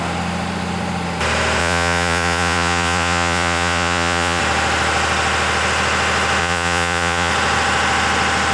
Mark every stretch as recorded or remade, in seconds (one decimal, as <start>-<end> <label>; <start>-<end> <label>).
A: 0.0-1.6 recorded; 1.6-4.4 remade; 4.4-6.4 recorded; 6.4-7.3 remade; 7.3-8.5 recorded